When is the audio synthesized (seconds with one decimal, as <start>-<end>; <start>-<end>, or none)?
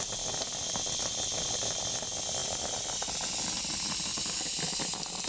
none